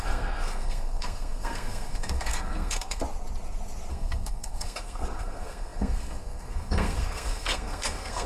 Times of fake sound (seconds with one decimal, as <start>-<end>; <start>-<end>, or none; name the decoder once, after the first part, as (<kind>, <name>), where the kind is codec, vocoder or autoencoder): 0.0-3.0 (codec, SNAC); 3.9-8.3

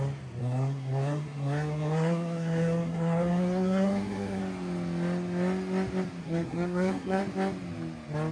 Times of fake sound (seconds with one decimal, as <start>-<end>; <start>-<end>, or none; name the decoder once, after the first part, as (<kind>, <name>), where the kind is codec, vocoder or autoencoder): 0.4-4.4 (codec, SNAC); 6.2-7.2

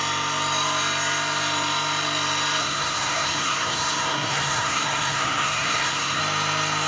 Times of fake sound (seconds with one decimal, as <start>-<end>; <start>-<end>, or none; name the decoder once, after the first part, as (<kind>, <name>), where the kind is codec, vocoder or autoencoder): 2.6-6.2 (codec, SNAC)

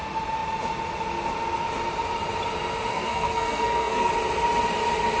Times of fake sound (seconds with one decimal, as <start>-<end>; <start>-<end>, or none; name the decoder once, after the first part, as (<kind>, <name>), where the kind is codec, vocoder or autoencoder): 2.9-4.1 (codec, SNAC)

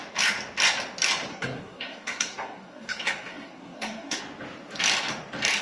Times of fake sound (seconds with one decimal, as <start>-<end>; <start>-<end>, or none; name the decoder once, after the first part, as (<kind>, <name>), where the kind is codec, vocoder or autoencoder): 1.3-4.2 (codec, SNAC)

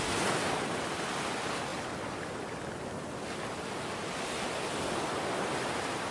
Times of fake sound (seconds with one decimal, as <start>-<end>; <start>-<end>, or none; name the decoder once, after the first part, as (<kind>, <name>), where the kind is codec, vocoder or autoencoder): none

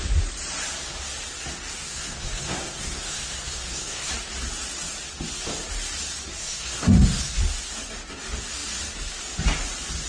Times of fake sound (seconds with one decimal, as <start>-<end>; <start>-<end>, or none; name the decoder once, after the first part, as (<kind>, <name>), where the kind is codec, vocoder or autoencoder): 1.8-4.1 (codec, SNAC); 6.4-7.4

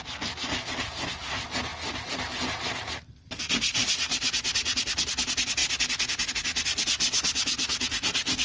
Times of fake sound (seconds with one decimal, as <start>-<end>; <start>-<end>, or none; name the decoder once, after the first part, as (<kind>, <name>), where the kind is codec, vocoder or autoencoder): none